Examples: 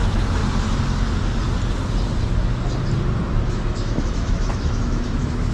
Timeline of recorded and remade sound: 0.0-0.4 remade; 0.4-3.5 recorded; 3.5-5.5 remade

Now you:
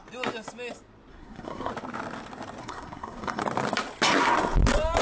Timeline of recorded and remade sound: 0.0-1.1 recorded; 1.1-1.7 remade; 1.7-2.6 recorded; 2.6-3.4 remade; 3.4-5.0 recorded

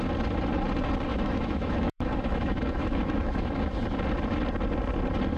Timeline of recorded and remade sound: 0.0-1.1 recorded; 1.1-3.7 remade; 3.7-5.4 recorded

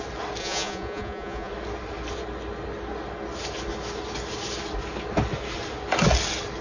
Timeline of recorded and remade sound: 0.0-0.4 recorded; 0.4-1.5 remade; 1.5-6.6 recorded

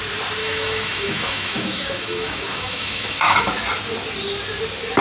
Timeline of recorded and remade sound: 0.0-0.4 recorded; 0.4-3.4 remade; 3.4-5.0 recorded

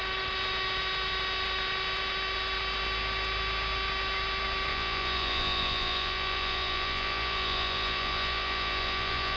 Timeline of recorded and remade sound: 0.0-4.7 recorded; 4.7-9.4 remade